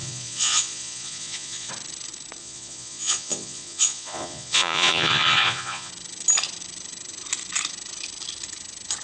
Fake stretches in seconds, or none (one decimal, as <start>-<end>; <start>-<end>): 0.0-1.7; 2.4-5.9